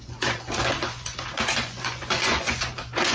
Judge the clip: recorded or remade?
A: remade